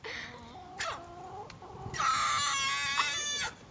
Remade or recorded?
recorded